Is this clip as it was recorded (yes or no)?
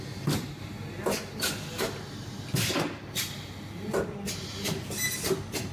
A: yes